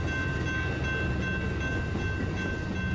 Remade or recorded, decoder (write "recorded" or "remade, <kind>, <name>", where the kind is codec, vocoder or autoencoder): recorded